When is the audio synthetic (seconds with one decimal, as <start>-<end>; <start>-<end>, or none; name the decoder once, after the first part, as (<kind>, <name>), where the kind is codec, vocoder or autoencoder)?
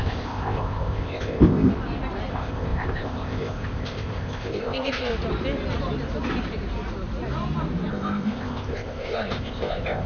0.0-1.7 (codec, ZipCodec); 2.3-5.1; 7.9-10.1